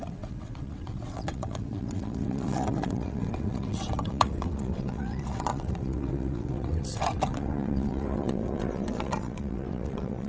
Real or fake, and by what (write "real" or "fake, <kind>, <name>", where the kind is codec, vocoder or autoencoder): fake, vocoder, WaveNeXt